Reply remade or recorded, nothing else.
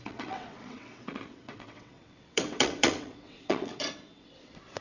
remade